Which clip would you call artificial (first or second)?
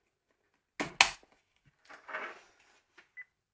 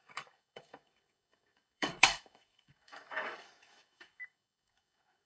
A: second